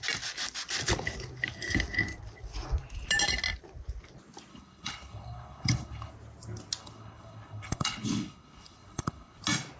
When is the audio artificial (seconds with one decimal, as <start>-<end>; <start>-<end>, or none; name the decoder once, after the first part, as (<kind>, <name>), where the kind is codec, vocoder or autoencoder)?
4.5-6.1 (codec, HILCodec); 6.8-9.4